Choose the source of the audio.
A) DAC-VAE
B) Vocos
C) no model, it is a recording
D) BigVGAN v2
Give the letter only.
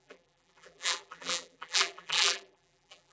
D